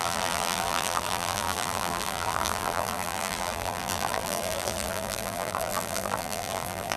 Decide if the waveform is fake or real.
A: fake